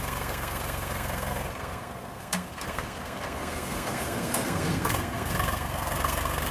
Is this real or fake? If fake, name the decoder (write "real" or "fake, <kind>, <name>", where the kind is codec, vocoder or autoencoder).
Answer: fake, codec, SNAC